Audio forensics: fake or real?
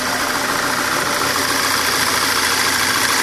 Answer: real